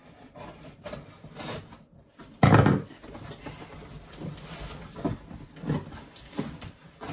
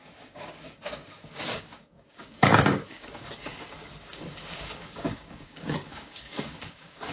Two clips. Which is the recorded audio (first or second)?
first